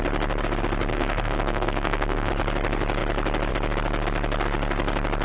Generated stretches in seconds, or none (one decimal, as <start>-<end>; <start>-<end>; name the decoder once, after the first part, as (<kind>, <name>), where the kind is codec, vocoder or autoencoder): 0.9-2.3 (codec, SNAC)